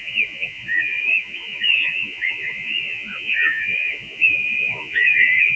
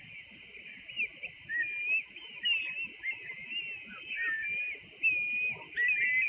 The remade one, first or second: first